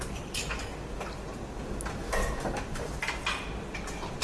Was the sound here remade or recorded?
recorded